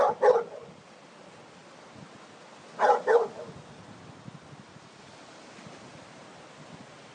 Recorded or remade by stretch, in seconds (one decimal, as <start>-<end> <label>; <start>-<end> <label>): 0.0-7.1 recorded